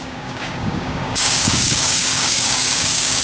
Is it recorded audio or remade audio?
remade